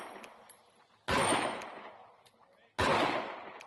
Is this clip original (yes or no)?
yes